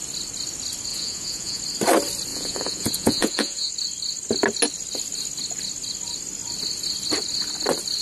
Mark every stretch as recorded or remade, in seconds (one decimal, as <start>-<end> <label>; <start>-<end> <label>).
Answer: 0.0-0.9 recorded; 0.9-1.6 remade; 1.6-2.3 recorded; 2.3-3.7 remade; 3.7-8.0 recorded